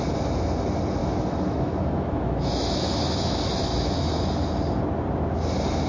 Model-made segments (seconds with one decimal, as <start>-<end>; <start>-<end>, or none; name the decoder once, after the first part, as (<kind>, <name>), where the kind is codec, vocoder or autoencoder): 1.0-4.5 (autoencoder, DAC-VAE)